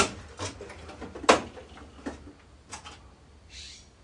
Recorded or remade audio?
recorded